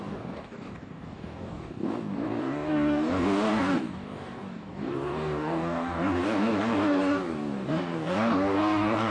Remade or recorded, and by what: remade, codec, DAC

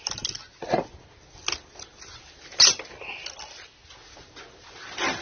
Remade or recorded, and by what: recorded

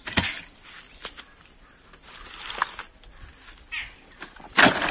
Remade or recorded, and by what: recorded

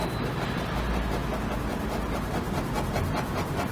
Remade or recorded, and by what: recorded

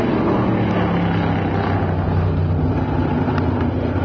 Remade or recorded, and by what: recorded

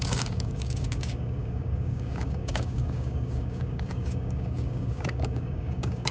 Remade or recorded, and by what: remade, codec, DAC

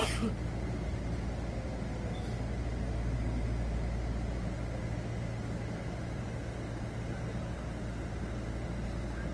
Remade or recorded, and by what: recorded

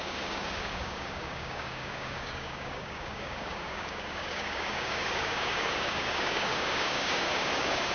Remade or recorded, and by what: remade, codec, DAC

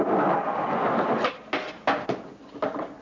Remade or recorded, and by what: recorded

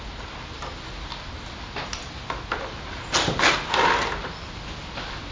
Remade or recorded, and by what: recorded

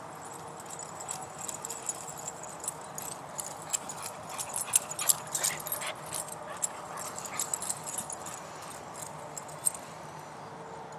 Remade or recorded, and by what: recorded